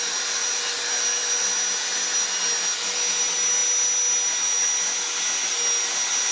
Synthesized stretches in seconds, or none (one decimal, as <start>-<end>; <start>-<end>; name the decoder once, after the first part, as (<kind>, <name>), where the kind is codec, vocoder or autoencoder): none